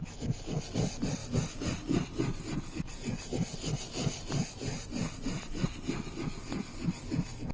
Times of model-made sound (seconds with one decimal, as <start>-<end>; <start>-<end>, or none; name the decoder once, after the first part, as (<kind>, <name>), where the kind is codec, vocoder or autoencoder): 1.2-2.2 (vocoder, BigVGAN v2)